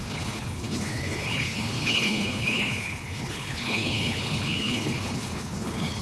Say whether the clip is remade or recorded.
remade